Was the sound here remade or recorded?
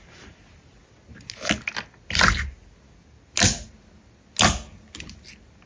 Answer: recorded